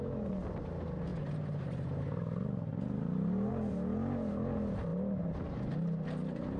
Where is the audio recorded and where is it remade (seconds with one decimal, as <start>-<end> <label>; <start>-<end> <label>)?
0.0-6.6 recorded